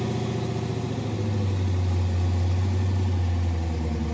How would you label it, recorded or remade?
recorded